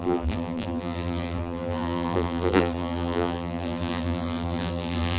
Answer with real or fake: fake